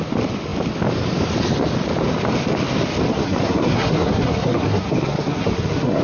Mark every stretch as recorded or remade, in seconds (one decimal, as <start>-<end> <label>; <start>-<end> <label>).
0.0-3.1 recorded; 3.1-6.0 remade